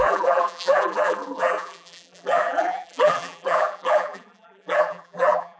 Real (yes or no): no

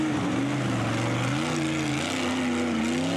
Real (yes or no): yes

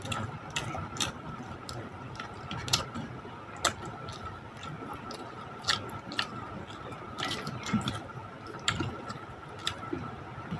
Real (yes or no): yes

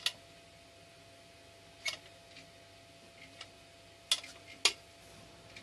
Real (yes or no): yes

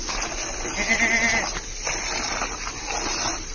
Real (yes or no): yes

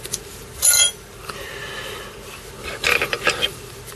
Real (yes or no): no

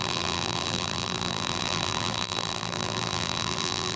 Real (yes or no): no